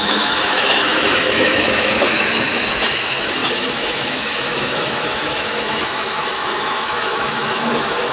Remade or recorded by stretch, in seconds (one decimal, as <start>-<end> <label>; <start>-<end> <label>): 0.0-8.1 remade